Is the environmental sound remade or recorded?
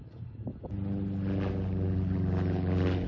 recorded